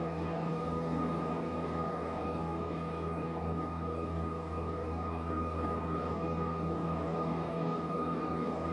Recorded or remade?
remade